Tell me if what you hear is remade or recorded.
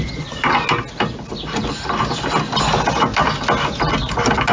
recorded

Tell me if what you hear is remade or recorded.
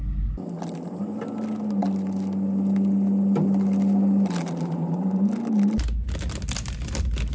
recorded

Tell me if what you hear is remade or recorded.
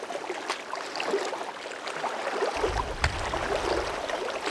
recorded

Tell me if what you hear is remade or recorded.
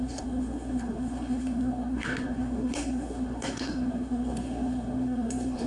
remade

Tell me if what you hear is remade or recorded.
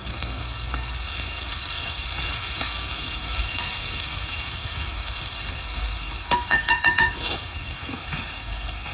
remade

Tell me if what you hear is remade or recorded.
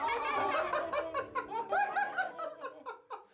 recorded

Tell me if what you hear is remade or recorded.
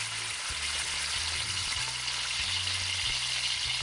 recorded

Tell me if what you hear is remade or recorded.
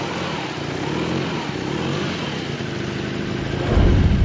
recorded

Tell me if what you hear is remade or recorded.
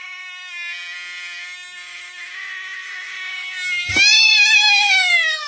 recorded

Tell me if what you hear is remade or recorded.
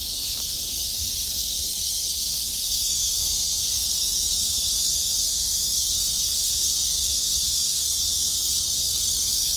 remade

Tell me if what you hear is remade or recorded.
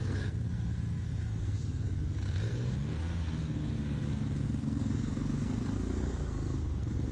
remade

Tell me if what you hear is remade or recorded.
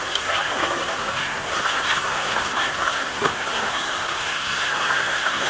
remade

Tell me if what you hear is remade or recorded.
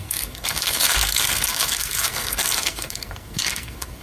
remade